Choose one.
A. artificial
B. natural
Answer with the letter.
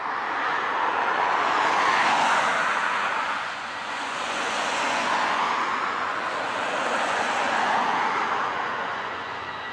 A